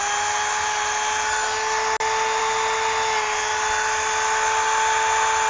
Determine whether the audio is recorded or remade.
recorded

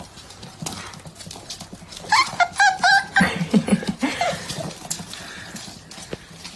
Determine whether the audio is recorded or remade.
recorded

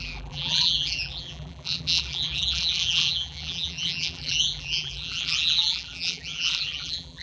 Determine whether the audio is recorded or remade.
remade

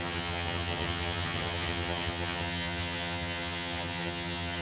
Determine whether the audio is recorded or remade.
remade